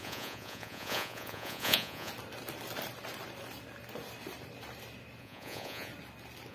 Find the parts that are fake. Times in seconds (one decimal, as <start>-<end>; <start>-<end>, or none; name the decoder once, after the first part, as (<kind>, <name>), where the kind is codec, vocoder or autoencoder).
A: 0.0-2.1 (vocoder, Vocos); 5.2-5.9